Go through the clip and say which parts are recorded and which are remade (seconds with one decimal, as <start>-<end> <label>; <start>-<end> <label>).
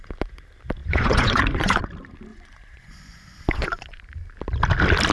0.0-0.8 recorded; 0.8-1.8 remade; 1.8-2.3 recorded; 2.3-4.0 remade; 4.0-5.1 recorded